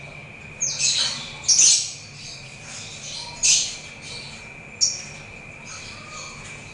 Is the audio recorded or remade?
recorded